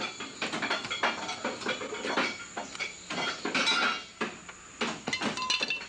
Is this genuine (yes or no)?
yes